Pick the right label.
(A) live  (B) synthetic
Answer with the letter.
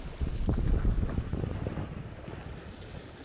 A